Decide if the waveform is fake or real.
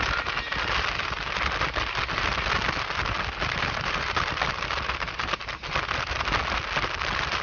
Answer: real